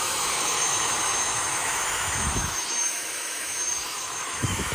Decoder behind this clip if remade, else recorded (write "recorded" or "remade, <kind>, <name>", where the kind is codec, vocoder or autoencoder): remade, autoencoder, DAC-VAE